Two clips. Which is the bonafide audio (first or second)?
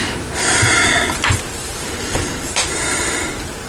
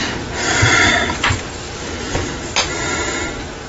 second